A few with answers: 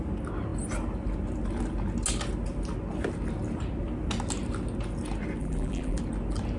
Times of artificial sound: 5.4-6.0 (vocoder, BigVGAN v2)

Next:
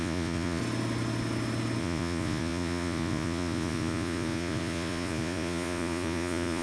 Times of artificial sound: 0.0-0.6 (vocoder, Vocos); 1.8-6.6

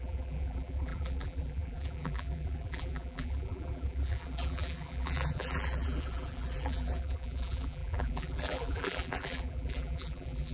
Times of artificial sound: 0.0-10.5 (vocoder, BigVGAN v2)

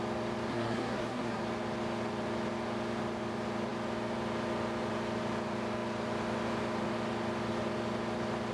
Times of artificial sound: 0.5-1.4 (codec, SNAC)

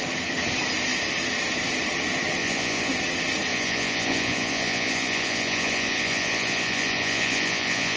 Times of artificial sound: 2.4-2.9 (vocoder, Vocos); 3.5-8.0

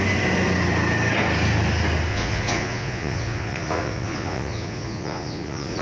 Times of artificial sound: 2.1-5.8 (vocoder, Vocos)

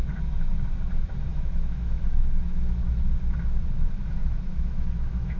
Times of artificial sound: 1.3-3.1 (autoencoder, DAC-VAE); 4.2-5.4

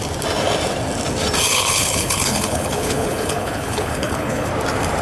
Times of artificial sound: 1.5-4.5 (codec, HILCodec)